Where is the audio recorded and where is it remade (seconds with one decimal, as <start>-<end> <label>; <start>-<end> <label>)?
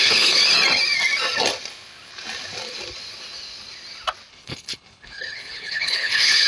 0.0-0.4 remade; 0.4-4.3 recorded; 4.3-6.5 remade